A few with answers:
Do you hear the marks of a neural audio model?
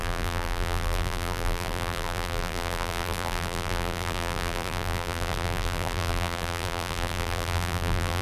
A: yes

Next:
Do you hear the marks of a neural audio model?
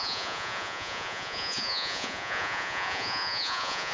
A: yes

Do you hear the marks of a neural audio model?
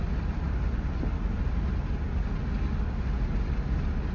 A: no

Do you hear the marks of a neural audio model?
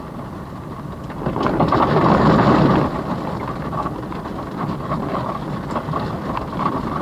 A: no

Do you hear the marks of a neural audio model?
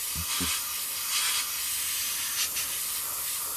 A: no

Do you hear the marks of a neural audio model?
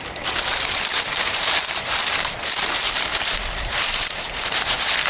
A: yes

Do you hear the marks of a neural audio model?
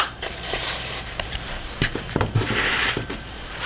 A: yes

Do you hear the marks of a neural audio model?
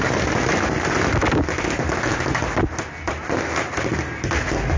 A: no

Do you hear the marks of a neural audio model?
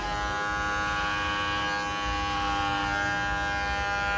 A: no